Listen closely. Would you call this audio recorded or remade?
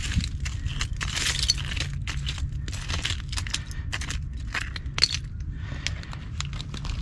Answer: recorded